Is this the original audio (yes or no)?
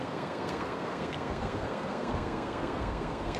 no